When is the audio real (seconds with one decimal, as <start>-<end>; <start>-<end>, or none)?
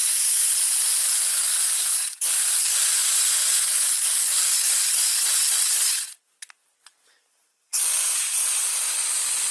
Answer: 0.5-1.3; 2.2-3.4; 4.4-9.5